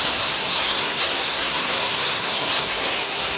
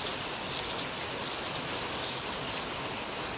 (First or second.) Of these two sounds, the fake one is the first